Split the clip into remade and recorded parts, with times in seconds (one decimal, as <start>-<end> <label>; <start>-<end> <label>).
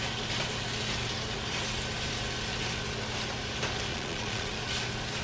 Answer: 0.0-3.9 recorded; 3.9-4.5 remade; 4.5-5.2 recorded